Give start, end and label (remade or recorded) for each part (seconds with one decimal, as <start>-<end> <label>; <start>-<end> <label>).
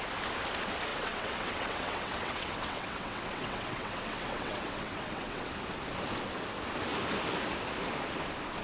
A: 0.0-0.9 recorded; 0.9-5.5 remade; 5.5-8.6 recorded